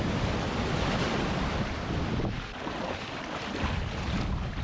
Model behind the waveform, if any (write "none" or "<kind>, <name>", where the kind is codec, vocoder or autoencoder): vocoder, BigVGAN v2